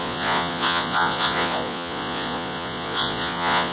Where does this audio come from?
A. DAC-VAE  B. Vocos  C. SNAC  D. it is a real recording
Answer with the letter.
B